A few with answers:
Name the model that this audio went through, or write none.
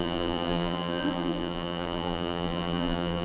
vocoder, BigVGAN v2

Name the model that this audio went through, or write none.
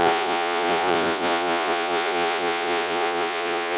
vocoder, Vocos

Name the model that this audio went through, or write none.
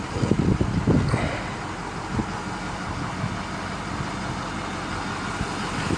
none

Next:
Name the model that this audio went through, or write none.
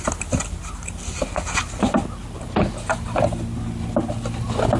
none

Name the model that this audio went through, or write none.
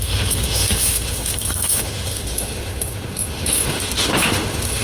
autoencoder, DAC-VAE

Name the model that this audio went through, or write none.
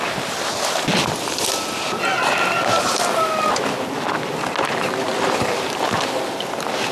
none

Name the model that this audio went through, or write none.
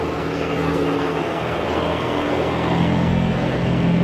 codec, SNAC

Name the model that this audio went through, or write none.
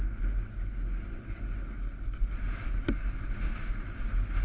none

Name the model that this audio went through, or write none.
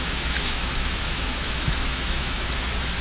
autoencoder, DAC-VAE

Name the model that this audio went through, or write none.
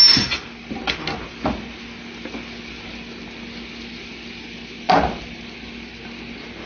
none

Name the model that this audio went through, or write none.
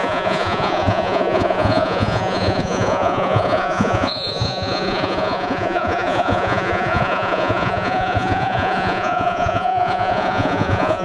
vocoder, Vocos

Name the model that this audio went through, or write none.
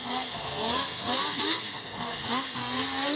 codec, SNAC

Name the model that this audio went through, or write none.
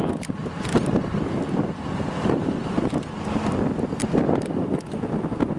none